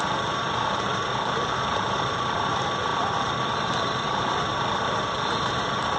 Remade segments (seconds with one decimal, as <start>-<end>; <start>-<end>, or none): 0.0-6.0